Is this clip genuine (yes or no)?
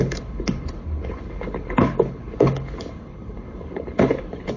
no